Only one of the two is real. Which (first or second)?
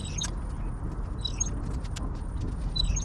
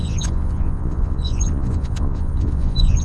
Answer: first